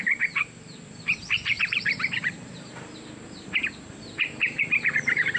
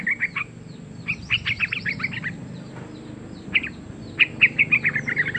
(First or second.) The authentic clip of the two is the second